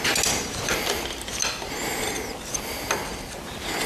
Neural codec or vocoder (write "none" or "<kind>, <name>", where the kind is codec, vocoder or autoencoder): none